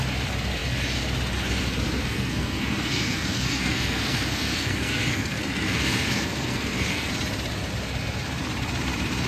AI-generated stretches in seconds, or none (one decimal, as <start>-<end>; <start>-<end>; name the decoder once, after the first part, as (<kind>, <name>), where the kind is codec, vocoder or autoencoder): 2.0-7.1 (codec, SNAC)